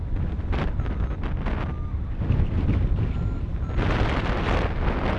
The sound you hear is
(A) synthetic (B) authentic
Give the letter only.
B